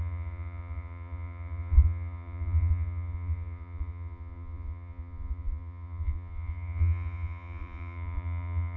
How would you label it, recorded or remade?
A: remade